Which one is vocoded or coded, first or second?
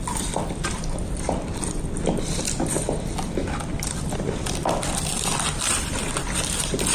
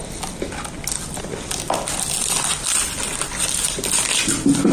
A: first